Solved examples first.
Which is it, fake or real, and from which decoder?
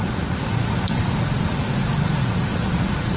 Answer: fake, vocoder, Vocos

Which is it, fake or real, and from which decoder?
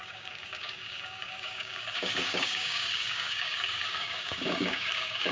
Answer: fake, codec, DAC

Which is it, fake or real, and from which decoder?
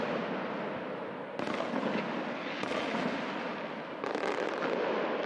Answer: real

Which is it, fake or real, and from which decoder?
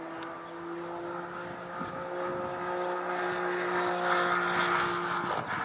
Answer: real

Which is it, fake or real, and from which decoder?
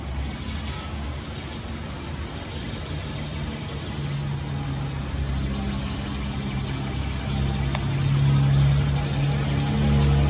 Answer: real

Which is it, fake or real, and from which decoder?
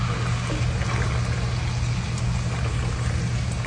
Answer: real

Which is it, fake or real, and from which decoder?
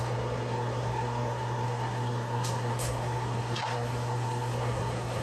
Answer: fake, codec, SNAC